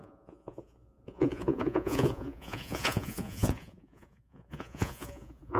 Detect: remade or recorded remade